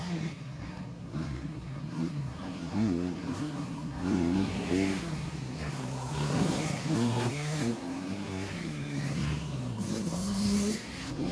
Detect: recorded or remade remade